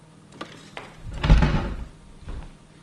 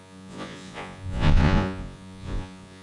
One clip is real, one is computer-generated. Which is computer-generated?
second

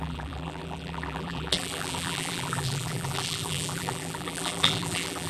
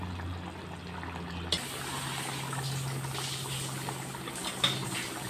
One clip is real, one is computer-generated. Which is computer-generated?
first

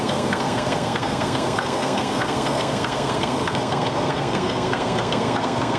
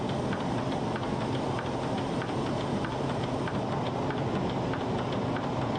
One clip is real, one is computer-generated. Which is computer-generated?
first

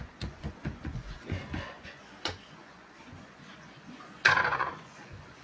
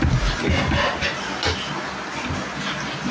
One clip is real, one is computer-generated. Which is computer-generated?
first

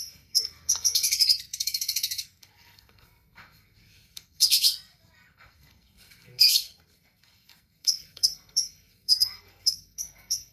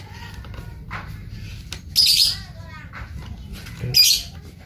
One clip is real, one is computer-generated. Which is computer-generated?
first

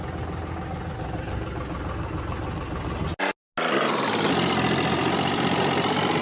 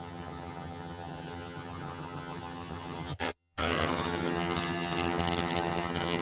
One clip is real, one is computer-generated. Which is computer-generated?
second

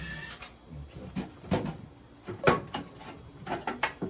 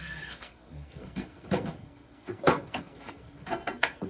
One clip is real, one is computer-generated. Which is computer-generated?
second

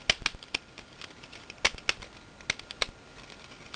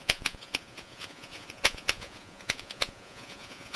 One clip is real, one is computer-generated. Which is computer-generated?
second